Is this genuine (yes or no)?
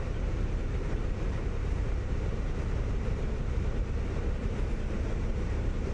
no